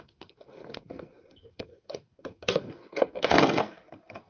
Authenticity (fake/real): fake